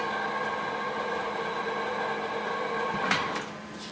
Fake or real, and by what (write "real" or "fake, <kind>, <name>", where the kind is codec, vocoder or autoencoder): real